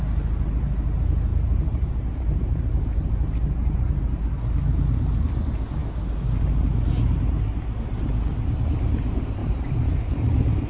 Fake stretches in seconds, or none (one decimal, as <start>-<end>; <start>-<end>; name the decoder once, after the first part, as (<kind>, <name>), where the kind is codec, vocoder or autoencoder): 1.3-4.2 (vocoder, BigVGAN v2); 9.4-10.7